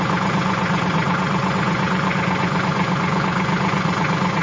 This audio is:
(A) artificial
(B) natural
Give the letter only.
A